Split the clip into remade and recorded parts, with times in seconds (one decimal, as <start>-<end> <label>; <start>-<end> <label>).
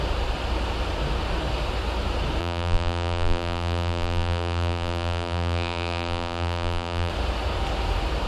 0.0-2.4 recorded; 2.4-7.1 remade; 7.1-8.3 recorded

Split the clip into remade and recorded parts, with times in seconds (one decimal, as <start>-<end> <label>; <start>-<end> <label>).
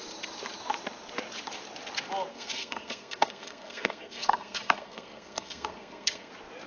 0.0-2.3 recorded; 2.3-6.3 remade; 6.3-6.7 recorded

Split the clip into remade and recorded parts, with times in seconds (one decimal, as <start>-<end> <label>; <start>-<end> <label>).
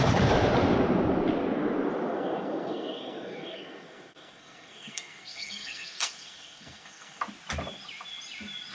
0.0-2.1 recorded; 2.1-7.2 remade; 7.2-8.7 recorded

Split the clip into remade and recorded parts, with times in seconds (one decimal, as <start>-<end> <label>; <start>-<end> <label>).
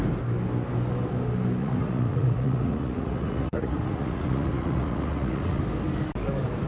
0.0-1.6 recorded; 1.6-5.6 remade; 5.6-6.7 recorded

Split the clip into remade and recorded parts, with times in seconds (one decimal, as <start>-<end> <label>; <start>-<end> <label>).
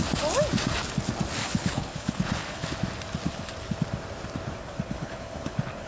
0.0-1.4 recorded; 1.4-2.7 remade; 2.7-4.6 recorded; 4.6-5.9 remade